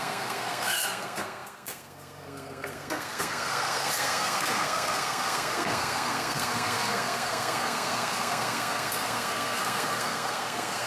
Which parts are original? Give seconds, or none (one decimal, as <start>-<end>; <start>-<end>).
none